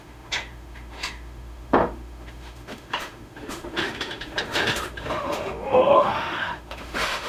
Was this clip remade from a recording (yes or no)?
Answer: yes